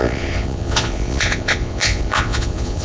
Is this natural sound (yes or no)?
no